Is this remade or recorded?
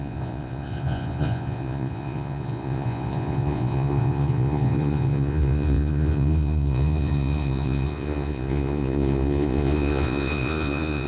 remade